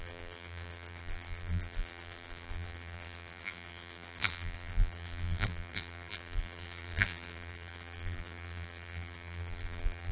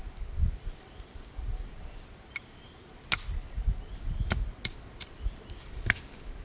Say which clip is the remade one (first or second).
first